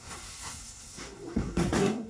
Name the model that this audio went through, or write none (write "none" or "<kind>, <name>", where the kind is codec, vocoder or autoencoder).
codec, SNAC